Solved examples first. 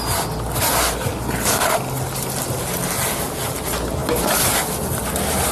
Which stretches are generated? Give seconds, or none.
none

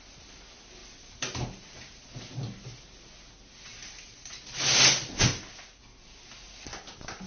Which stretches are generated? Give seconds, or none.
0.8-2.1 (vocoder, BigVGAN v2); 3.7-4.4

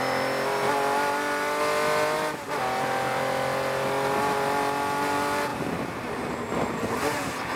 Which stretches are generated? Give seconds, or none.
5.5-7.6 (vocoder, BigVGAN v2)

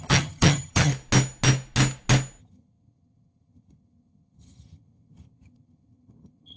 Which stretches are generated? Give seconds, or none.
0.0-0.9 (vocoder, HiFi-GAN); 2.4-6.6